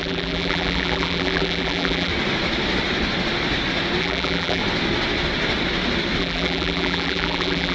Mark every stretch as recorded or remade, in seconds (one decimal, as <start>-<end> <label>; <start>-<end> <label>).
0.0-2.1 remade; 2.1-4.0 recorded; 4.0-4.6 remade; 4.6-6.2 recorded; 6.2-7.7 remade